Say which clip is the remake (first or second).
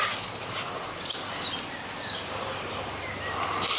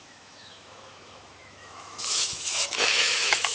second